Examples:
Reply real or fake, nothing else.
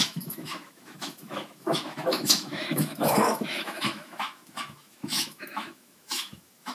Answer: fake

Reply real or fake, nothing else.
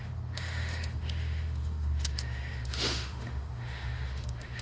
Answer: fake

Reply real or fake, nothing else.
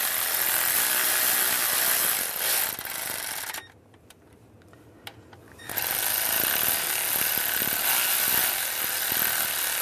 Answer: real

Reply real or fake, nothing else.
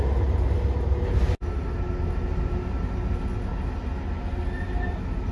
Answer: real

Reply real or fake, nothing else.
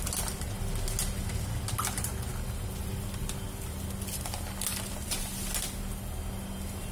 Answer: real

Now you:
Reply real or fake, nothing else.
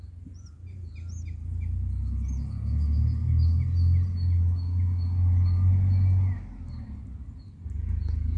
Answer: real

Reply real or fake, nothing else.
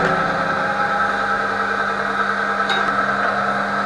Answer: real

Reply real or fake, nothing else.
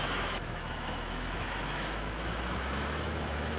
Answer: fake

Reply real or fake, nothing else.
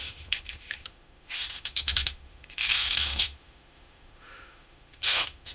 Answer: fake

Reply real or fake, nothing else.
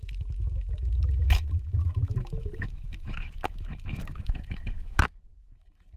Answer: fake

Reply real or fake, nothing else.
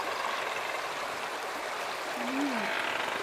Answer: real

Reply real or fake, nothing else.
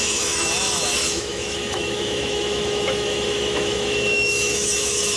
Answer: fake